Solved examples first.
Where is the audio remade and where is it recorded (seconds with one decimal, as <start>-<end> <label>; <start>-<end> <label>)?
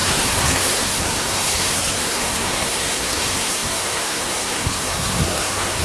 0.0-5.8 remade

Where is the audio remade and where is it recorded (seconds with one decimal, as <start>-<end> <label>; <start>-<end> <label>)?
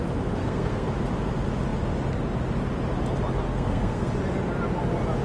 0.0-0.4 recorded; 0.4-0.9 remade; 0.9-3.5 recorded; 3.5-4.1 remade; 4.1-5.2 recorded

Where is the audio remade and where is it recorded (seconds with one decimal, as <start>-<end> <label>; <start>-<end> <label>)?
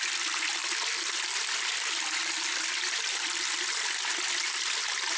0.0-5.2 recorded